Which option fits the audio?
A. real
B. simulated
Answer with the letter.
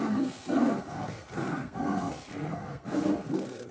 B